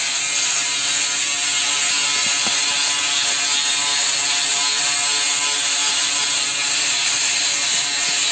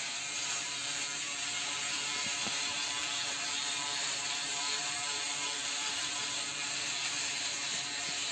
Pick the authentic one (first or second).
first